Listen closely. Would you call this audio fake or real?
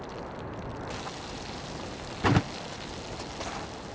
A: real